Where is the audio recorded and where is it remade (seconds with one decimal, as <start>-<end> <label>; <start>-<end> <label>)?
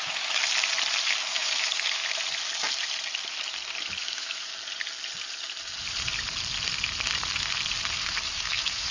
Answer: 0.0-0.4 remade; 0.4-1.2 recorded; 1.2-2.0 remade; 2.0-4.0 recorded; 4.0-4.5 remade; 4.5-8.0 recorded; 8.0-8.9 remade